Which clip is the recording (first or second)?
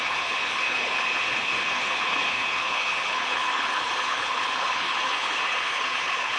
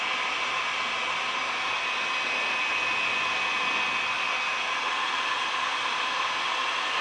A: second